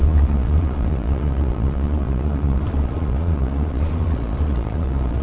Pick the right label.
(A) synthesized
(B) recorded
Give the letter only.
A